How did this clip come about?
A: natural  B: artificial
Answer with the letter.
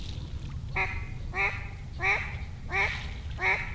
A